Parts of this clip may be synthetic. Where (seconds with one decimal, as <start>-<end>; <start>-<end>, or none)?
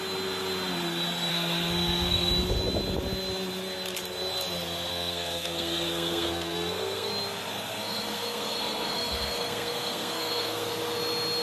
1.3-2.3; 4.9-7.1; 7.5-10.7